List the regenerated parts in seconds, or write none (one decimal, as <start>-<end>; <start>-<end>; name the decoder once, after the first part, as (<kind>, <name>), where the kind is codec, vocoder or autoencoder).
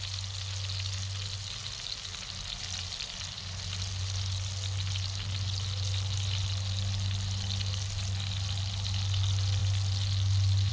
none